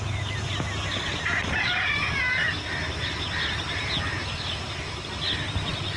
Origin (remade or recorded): recorded